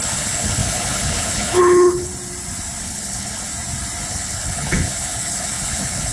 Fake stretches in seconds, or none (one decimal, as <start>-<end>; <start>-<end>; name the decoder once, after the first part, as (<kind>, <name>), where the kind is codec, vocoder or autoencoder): 0.0-2.1 (codec, HILCodec); 2.8-3.5; 4.1-6.1